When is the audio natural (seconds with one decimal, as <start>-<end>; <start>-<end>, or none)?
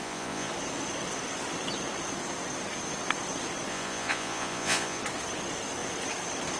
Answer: 0.5-3.7; 5.0-6.6